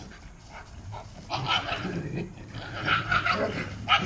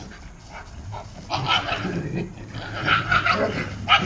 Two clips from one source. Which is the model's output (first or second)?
first